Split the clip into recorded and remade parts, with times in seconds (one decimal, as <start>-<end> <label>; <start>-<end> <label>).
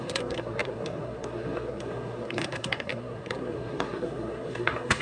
0.0-5.0 remade